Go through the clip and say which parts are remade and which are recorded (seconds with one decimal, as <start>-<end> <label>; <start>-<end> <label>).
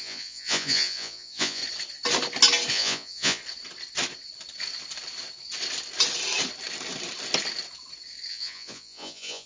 0.0-1.6 remade; 1.6-2.7 recorded; 2.7-3.4 remade; 3.4-8.3 recorded; 8.3-9.5 remade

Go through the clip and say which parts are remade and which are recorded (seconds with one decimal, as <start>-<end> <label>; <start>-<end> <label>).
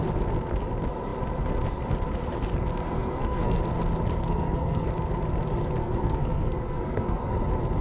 0.0-2.7 recorded; 2.7-3.6 remade; 3.6-4.2 recorded; 4.2-4.9 remade; 4.9-5.8 recorded; 5.8-7.3 remade; 7.3-7.8 recorded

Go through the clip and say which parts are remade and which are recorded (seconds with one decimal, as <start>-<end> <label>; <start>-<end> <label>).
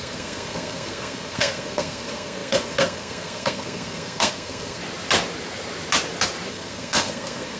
0.0-4.8 remade; 4.8-6.5 recorded; 6.5-7.6 remade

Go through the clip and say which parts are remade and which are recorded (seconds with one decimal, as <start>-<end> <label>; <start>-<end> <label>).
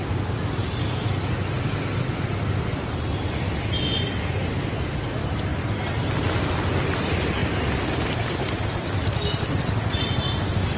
0.0-10.8 recorded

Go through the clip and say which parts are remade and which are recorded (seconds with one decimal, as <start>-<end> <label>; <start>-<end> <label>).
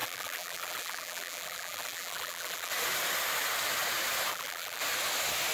0.0-2.7 remade; 2.7-4.3 recorded; 4.3-4.8 remade; 4.8-5.5 recorded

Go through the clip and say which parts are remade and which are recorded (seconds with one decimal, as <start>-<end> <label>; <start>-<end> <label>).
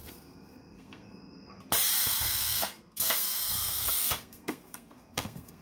0.0-1.6 remade; 1.6-2.0 recorded; 2.0-5.6 remade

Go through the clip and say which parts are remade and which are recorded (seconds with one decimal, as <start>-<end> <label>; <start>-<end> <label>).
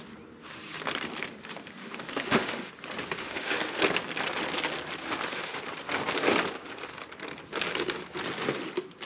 0.0-1.8 recorded; 1.8-2.7 remade; 2.7-3.2 recorded; 3.2-3.8 remade; 3.8-5.0 recorded; 5.0-5.6 remade; 5.6-9.0 recorded